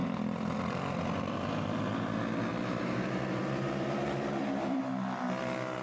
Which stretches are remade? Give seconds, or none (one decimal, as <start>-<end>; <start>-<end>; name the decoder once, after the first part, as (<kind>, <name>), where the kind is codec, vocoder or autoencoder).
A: 0.0-2.0 (vocoder, BigVGAN v2); 2.5-4.8